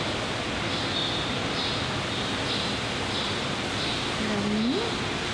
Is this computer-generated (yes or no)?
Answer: no